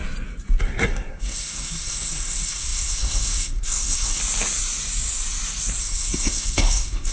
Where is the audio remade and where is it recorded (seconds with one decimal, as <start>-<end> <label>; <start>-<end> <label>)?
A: 0.0-0.6 recorded; 0.6-4.2 remade; 4.2-5.8 recorded; 5.8-7.1 remade

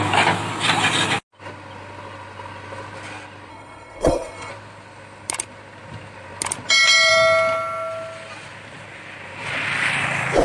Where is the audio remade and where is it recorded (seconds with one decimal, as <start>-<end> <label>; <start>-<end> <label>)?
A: 0.0-3.5 recorded; 3.5-4.5 remade; 4.5-10.4 recorded

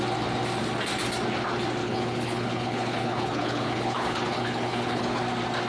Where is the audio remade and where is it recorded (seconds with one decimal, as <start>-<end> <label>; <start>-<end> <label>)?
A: 0.0-1.8 recorded; 1.8-5.2 remade; 5.2-5.7 recorded

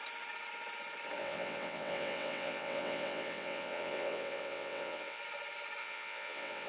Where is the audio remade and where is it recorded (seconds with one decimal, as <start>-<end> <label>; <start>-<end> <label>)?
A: 0.0-1.2 recorded; 1.2-5.2 remade; 5.2-5.8 recorded; 5.8-6.7 remade

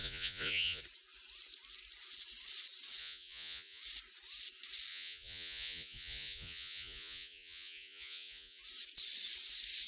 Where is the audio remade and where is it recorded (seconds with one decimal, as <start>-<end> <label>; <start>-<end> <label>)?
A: 0.0-0.8 remade; 0.8-3.0 recorded; 3.0-3.8 remade; 3.8-4.9 recorded; 4.9-8.6 remade; 8.6-9.9 recorded

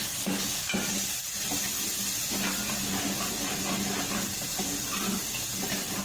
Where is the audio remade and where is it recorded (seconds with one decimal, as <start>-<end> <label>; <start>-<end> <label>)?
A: 0.0-6.0 recorded

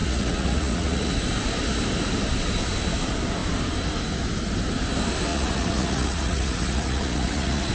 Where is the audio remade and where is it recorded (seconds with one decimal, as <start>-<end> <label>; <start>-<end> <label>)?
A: 0.0-1.1 remade; 1.1-5.3 recorded; 5.3-7.7 remade

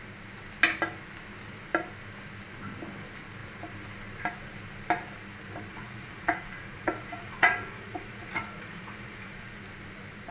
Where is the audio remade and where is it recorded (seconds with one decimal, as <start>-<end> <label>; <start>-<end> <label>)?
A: 0.0-5.7 recorded; 5.7-9.6 remade; 9.6-10.3 recorded